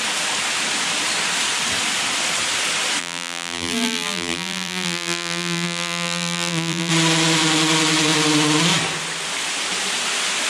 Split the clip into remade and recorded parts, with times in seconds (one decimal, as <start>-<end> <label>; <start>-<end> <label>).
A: 0.0-3.0 recorded; 3.0-6.9 remade; 6.9-10.5 recorded